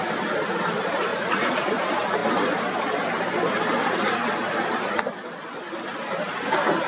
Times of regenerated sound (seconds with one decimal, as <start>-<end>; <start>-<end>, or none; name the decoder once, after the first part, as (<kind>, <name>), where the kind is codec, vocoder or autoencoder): 1.1-1.7 (vocoder, Vocos)